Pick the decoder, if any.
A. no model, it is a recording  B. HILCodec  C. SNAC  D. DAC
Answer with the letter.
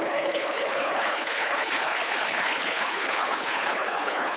B